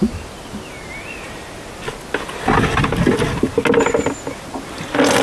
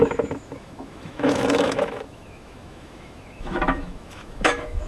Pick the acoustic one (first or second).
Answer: first